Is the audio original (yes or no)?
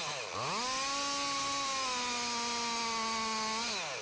yes